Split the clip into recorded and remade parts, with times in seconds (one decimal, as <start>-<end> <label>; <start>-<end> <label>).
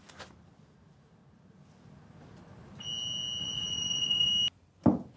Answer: 0.0-3.4 recorded; 3.4-4.3 remade; 4.3-5.2 recorded